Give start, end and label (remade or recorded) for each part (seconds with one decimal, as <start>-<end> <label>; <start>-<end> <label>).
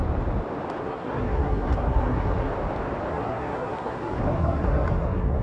0.0-0.8 recorded; 0.8-2.5 remade; 2.5-3.1 recorded; 3.1-5.4 remade